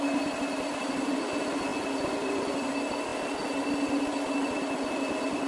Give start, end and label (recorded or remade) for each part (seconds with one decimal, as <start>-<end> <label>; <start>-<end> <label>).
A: 0.0-5.5 recorded